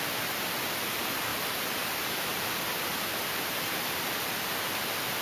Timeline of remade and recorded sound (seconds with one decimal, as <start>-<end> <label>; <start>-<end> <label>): 0.0-1.3 recorded; 1.3-4.4 remade; 4.4-5.2 recorded